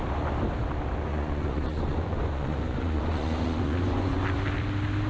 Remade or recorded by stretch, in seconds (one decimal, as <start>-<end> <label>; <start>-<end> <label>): 0.0-1.1 recorded; 1.1-4.2 remade; 4.2-5.1 recorded

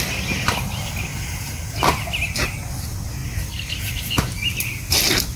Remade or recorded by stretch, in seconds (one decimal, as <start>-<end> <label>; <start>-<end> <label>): 0.0-5.4 recorded

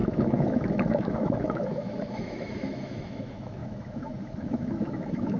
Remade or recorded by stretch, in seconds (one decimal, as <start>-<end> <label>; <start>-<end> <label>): 0.0-5.4 remade

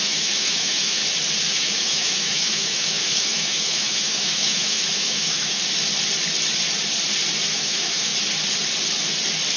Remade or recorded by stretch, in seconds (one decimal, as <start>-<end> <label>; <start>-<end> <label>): 0.0-1.0 remade; 1.0-1.5 recorded; 1.5-5.6 remade; 5.6-7.5 recorded; 7.5-8.1 remade; 8.1-9.6 recorded

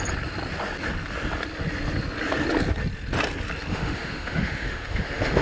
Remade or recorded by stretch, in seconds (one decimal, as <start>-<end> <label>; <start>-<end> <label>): 0.0-3.7 recorded; 3.7-5.4 remade

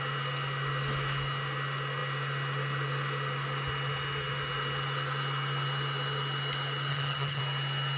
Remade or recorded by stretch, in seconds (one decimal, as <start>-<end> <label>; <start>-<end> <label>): 0.0-6.9 recorded; 6.9-7.4 remade; 7.4-8.0 recorded

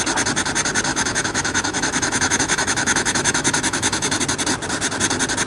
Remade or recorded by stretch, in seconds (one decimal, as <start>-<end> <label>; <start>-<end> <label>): 0.0-0.9 recorded; 0.9-4.2 remade; 4.2-5.5 recorded